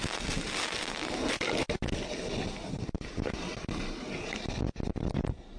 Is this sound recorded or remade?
recorded